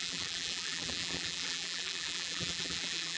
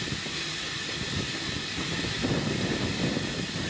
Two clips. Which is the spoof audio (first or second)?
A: first